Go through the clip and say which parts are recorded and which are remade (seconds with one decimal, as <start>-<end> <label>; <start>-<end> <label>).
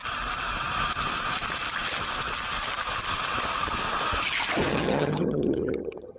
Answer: 0.0-4.7 recorded; 4.7-6.2 remade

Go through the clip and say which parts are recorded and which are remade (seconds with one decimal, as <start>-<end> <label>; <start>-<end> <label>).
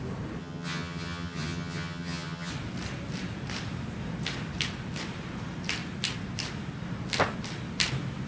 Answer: 0.0-0.4 recorded; 0.4-2.5 remade; 2.5-8.3 recorded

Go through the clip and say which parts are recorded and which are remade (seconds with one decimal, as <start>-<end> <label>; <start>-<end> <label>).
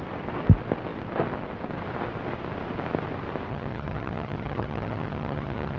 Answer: 0.0-3.5 recorded; 3.5-5.8 remade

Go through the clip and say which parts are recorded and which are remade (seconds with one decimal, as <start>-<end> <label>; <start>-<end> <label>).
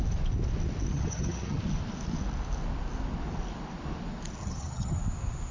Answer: 0.0-0.9 recorded; 0.9-1.6 remade; 1.6-4.4 recorded; 4.4-5.0 remade; 5.0-5.5 recorded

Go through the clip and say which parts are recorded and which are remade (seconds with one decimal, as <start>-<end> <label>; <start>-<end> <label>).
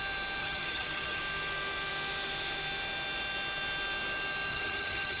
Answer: 0.0-0.4 recorded; 0.4-1.2 remade; 1.2-4.5 recorded; 4.5-5.2 remade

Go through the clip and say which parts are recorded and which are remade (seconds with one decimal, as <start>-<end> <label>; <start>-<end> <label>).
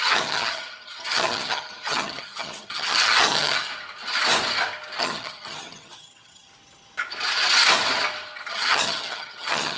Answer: 0.0-3.7 remade; 3.7-5.0 recorded; 5.0-6.5 remade; 6.5-8.5 recorded; 8.5-9.8 remade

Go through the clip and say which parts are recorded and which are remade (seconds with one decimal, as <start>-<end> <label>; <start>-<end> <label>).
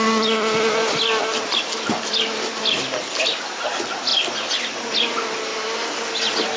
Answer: 0.0-6.6 recorded